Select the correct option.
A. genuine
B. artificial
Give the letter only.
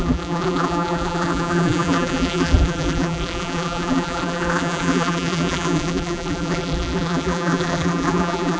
B